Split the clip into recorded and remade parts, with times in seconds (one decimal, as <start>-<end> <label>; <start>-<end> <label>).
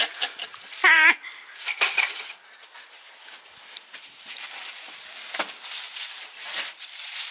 0.0-0.5 recorded; 0.5-4.8 remade; 4.8-7.3 recorded